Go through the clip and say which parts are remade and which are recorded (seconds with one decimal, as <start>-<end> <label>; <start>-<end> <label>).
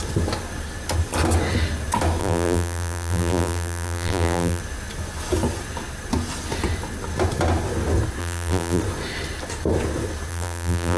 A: 0.0-2.2 recorded; 2.2-4.6 remade; 4.6-8.2 recorded; 8.2-8.8 remade; 8.8-10.3 recorded; 10.3-11.0 remade